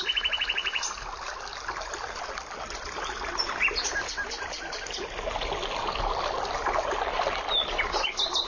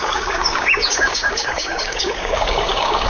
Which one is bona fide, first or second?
first